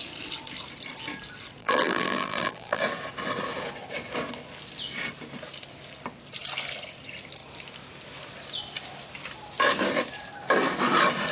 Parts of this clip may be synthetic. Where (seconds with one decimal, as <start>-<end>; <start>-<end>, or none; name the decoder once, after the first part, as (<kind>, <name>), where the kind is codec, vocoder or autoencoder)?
1.6-2.8 (vocoder, BigVGAN v2)